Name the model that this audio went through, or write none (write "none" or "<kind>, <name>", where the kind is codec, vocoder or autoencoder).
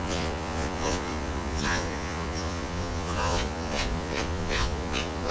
vocoder, Vocos